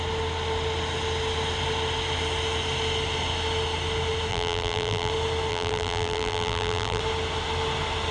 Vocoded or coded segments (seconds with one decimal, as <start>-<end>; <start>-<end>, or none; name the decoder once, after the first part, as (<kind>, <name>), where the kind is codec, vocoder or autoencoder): 4.3-5.1 (vocoder, BigVGAN v2); 5.5-7.0